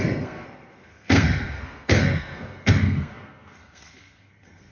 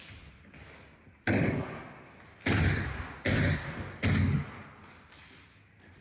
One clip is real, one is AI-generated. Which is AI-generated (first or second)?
first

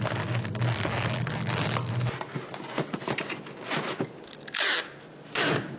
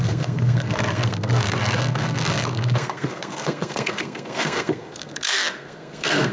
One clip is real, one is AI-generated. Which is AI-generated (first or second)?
second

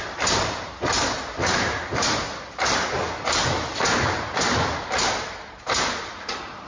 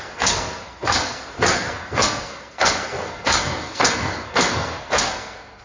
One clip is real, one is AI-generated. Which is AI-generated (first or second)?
second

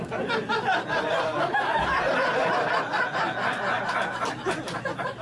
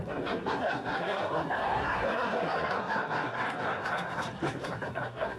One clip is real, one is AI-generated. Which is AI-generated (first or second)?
second